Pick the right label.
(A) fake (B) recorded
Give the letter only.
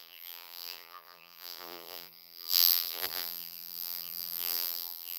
A